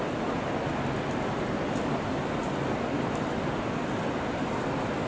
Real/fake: real